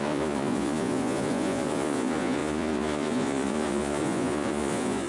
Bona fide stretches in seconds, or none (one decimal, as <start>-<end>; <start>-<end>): none